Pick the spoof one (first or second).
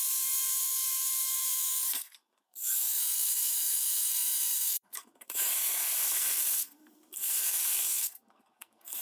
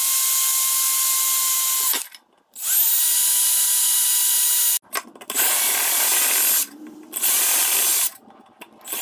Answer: first